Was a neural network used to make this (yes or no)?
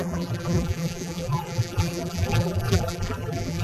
yes